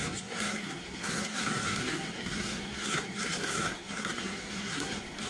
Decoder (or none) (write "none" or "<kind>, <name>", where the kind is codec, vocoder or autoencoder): codec, SNAC